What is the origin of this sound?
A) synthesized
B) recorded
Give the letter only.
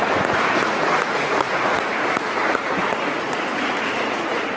A